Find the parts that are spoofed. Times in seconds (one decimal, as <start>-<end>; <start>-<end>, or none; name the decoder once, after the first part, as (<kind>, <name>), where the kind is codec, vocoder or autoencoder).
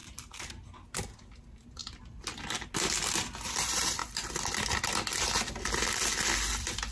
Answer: 0.0-0.5 (vocoder, BigVGAN v2)